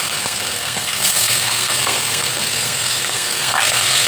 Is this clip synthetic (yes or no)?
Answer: yes